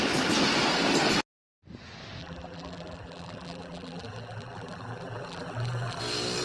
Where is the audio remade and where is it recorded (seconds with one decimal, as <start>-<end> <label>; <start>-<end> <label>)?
0.0-2.2 recorded; 2.2-6.0 remade; 6.0-6.4 recorded